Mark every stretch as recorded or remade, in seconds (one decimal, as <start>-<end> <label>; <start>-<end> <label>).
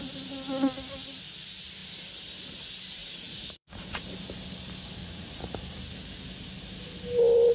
0.0-3.0 recorded; 3.0-4.0 remade; 4.0-5.0 recorded; 5.0-5.6 remade; 5.6-7.5 recorded